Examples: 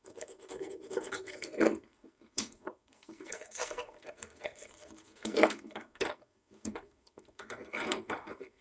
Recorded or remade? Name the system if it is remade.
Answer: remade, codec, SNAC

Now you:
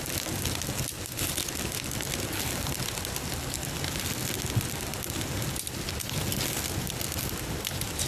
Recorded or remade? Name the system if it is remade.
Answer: recorded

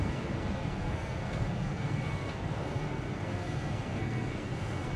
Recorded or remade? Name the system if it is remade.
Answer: remade, codec, SNAC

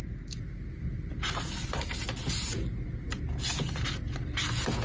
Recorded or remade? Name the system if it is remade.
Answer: recorded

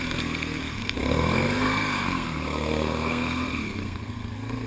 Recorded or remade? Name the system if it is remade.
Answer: remade, codec, SNAC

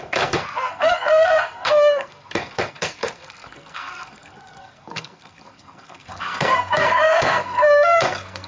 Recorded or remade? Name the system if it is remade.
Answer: remade, codec, SNAC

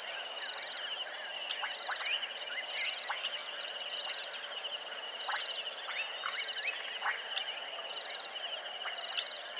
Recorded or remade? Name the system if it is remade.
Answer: recorded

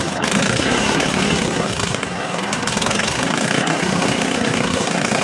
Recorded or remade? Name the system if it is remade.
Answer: remade, codec, SNAC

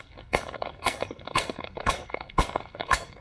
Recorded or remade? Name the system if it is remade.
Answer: remade, codec, SNAC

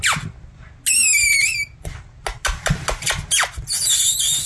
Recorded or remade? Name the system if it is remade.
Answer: recorded